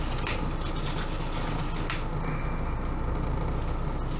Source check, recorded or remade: recorded